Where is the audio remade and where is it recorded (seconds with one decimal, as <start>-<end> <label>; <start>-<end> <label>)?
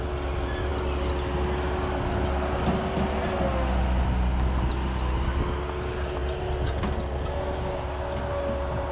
0.0-8.9 recorded